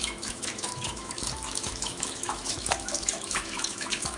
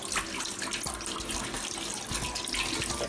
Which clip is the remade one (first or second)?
first